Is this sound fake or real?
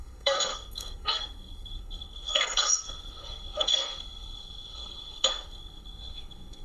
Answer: fake